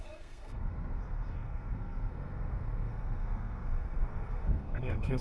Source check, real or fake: fake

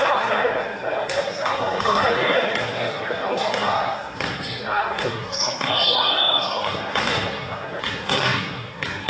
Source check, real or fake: fake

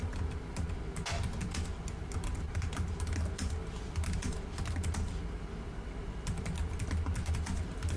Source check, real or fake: real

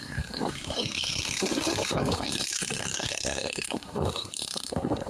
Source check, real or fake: fake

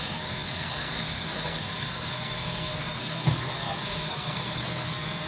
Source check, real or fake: fake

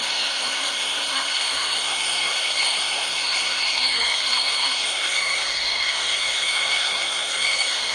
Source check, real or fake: fake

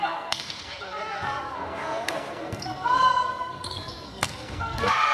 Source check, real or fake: fake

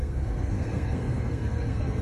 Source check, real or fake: fake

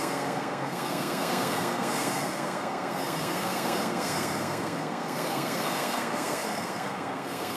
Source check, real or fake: fake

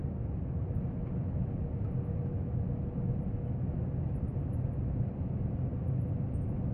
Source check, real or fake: real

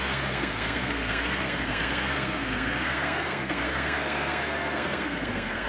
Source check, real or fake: fake